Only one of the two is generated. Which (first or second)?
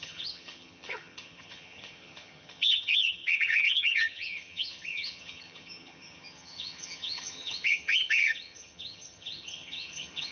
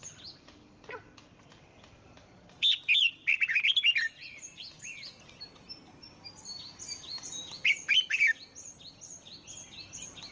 first